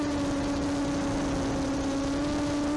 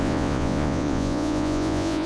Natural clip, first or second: first